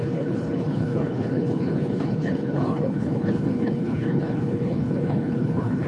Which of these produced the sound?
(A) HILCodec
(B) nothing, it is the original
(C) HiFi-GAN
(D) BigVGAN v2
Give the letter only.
A